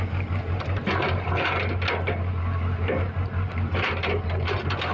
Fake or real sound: real